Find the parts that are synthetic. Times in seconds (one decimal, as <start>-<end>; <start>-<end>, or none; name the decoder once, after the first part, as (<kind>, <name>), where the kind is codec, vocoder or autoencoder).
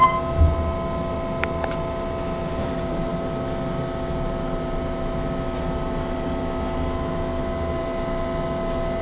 none